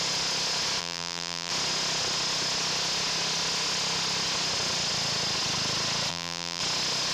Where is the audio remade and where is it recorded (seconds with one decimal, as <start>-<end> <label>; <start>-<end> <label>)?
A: 0.0-0.8 recorded; 0.8-1.5 remade; 1.5-6.1 recorded; 6.1-6.6 remade; 6.6-7.1 recorded